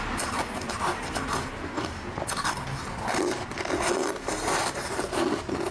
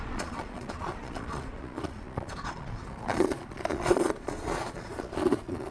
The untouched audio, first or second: first